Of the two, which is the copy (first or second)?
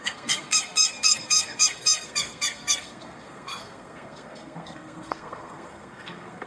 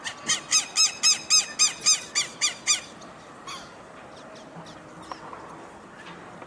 first